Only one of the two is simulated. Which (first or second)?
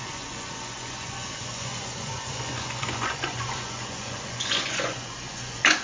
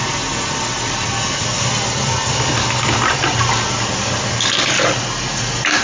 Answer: first